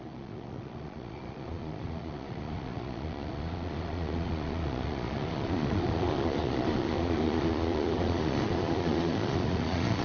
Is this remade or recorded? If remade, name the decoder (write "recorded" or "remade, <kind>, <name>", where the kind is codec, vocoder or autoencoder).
remade, vocoder, Vocos